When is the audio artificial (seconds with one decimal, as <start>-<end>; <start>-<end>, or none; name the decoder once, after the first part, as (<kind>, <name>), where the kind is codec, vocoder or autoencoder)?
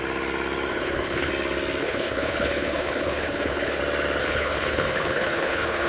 0.7-1.3 (codec, HILCodec); 1.8-3.8; 4.2-5.9